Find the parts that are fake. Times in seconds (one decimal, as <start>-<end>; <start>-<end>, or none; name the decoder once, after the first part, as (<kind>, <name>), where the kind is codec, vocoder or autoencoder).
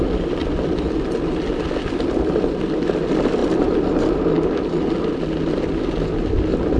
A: none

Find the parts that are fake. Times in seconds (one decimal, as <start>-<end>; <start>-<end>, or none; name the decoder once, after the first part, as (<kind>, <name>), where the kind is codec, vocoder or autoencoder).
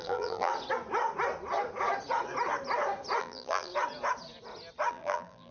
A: 0.0-0.5 (vocoder, BigVGAN v2); 3.2-3.7; 4.9-5.5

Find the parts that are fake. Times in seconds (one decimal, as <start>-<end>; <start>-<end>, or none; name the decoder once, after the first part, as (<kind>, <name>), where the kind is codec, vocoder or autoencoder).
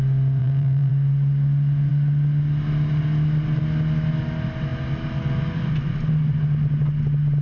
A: 0.4-0.9 (vocoder, BigVGAN v2)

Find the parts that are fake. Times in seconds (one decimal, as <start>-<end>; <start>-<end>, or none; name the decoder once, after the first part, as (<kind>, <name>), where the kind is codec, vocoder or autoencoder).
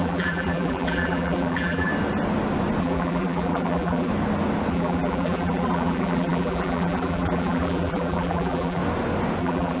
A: 0.0-1.9 (vocoder, BigVGAN v2); 2.8-4.1; 4.7-8.8; 9.4-9.8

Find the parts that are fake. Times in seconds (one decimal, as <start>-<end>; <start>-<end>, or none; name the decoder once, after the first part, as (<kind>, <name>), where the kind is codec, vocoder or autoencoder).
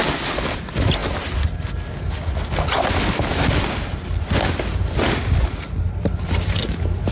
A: none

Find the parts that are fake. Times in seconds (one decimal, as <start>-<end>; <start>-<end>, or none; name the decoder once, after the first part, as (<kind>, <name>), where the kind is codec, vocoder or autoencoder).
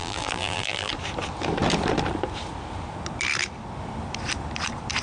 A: 0.0-0.9 (vocoder, BigVGAN v2)